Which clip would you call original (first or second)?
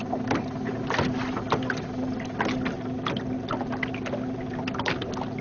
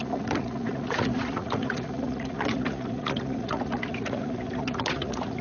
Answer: first